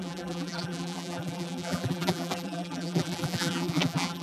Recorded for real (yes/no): no